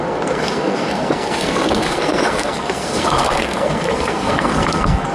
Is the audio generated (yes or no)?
yes